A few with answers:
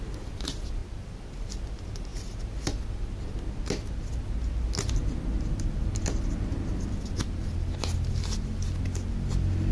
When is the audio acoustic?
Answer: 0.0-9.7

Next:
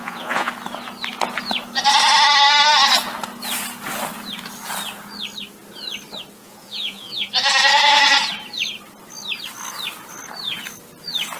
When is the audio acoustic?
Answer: 0.5-6.4; 7.3-11.4

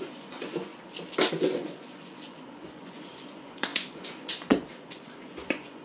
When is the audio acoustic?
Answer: 0.7-1.3

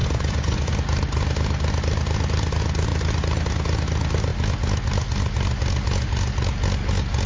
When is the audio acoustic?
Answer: 0.7-7.3

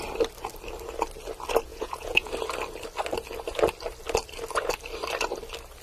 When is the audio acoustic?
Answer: 0.0-1.7; 2.3-5.8

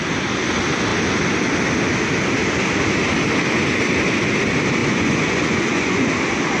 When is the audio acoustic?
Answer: 0.0-4.8; 6.1-6.6